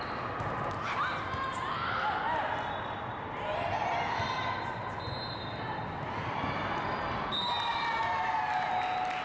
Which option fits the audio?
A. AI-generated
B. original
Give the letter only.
B